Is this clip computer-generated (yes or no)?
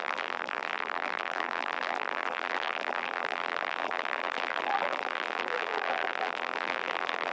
yes